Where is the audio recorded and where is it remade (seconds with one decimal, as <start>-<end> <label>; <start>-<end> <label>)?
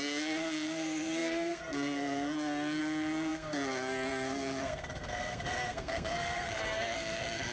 0.0-7.5 remade